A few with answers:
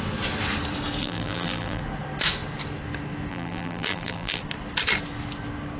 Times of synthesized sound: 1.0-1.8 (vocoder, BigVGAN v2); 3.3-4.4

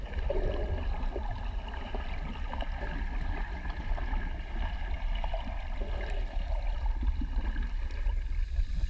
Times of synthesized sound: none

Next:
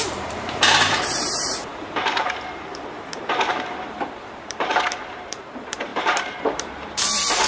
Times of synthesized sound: 0.0-7.5 (vocoder, BigVGAN v2)

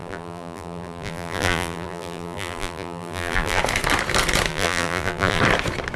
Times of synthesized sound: 0.0-3.6 (vocoder, BigVGAN v2); 4.5-5.4

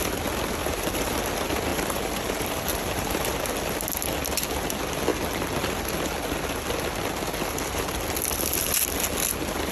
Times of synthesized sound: 0.6-1.2 (vocoder, BigVGAN v2); 1.7-3.3

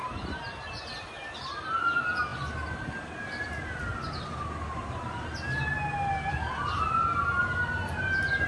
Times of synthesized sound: none

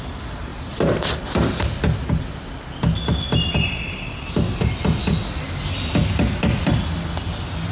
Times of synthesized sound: 0.5-1.1 (vocoder, BigVGAN v2)

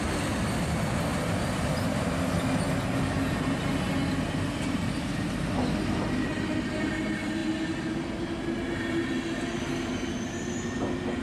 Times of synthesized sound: 1.1-2.3 (vocoder, BigVGAN v2)